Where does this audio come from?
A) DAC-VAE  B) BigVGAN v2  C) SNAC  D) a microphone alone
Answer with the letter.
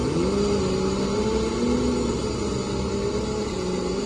D